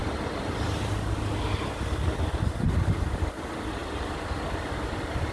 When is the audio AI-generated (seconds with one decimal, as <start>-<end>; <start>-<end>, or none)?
none